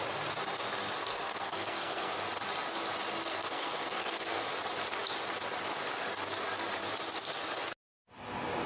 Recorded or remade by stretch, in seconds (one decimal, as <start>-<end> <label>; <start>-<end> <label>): 0.0-1.1 recorded; 1.1-2.1 remade; 2.1-3.3 recorded; 3.3-4.4 remade; 4.4-8.7 recorded